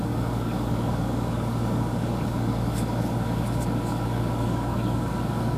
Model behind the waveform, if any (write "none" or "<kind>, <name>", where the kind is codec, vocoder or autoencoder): codec, DAC